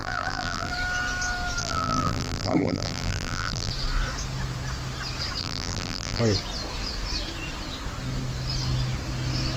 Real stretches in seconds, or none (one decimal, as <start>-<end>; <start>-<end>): 0.7-1.6; 3.7-5.4; 6.2-9.6